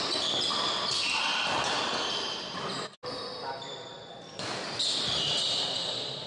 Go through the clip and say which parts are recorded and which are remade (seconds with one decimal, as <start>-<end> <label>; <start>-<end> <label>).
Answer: 0.0-6.3 recorded